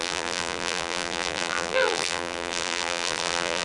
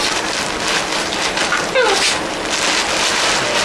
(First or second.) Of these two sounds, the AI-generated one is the first